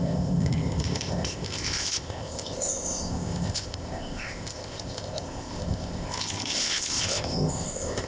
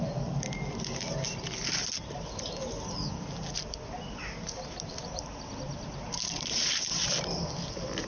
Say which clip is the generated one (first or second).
first